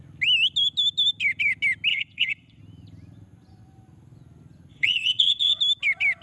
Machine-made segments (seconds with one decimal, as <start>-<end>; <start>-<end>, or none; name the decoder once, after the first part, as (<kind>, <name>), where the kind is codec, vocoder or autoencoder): 1.9-2.6 (vocoder, WaveNeXt); 4.7-5.6